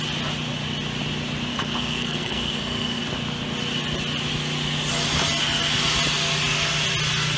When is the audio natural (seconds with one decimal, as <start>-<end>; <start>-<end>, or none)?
0.0-1.5; 3.0-7.4